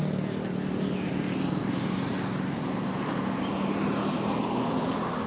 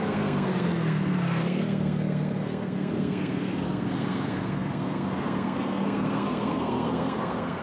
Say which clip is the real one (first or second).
first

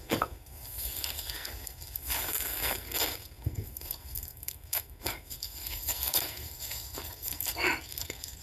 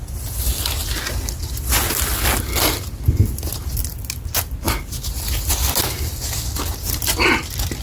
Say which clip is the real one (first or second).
second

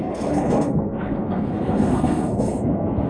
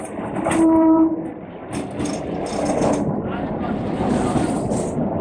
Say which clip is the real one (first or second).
second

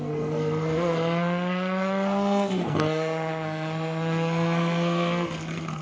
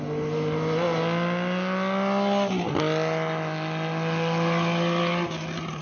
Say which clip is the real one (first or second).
second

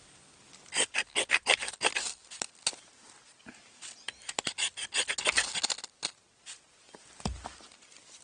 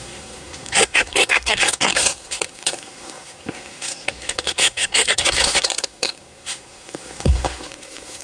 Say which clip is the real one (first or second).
first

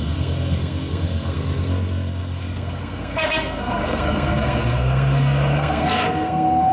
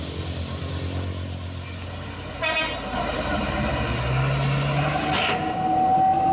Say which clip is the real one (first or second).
second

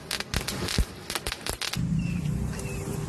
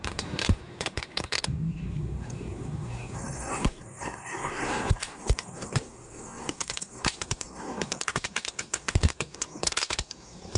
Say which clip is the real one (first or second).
first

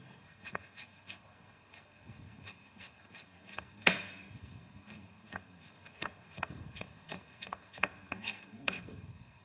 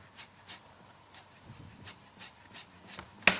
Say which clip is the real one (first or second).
second